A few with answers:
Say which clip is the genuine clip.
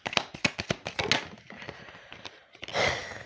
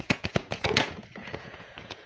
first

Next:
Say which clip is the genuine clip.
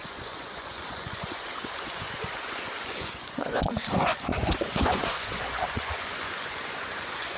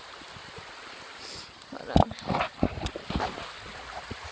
second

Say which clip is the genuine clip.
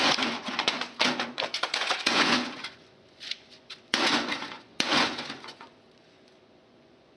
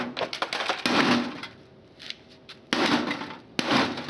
second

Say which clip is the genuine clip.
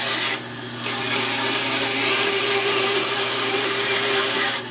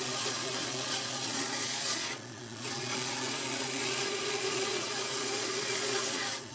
first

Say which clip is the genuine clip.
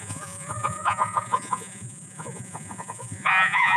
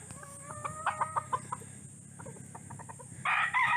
second